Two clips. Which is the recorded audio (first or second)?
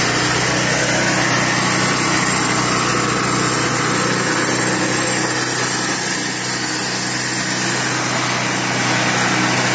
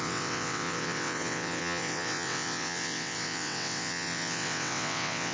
first